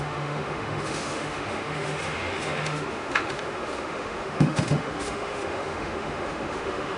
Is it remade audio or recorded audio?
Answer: remade